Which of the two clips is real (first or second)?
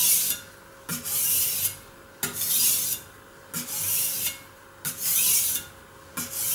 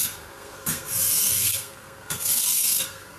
first